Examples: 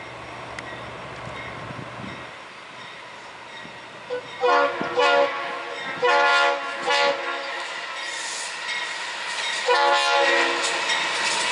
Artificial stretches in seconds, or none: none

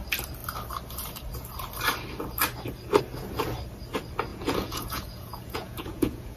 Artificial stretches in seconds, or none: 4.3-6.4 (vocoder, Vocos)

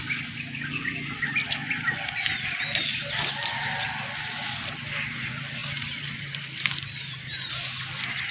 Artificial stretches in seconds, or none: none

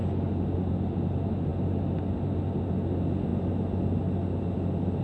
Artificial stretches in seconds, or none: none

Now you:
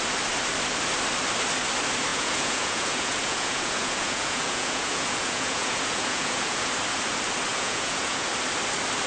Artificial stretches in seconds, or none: 2.1-6.7 (vocoder, Vocos); 7.5-8.3

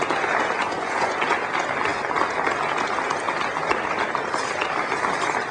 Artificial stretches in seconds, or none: 0.6-1.2 (vocoder, Vocos)

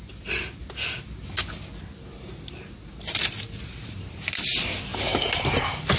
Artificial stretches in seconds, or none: none